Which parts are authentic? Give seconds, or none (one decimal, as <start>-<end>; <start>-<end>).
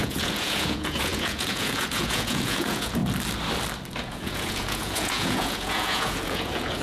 3.0-4.0